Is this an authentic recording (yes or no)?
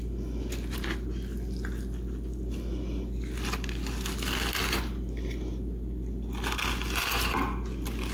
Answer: yes